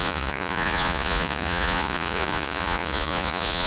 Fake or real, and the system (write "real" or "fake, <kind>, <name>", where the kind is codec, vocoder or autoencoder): fake, vocoder, Vocos